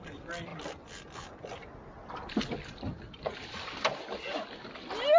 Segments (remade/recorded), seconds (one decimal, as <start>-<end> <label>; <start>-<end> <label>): 0.0-5.2 recorded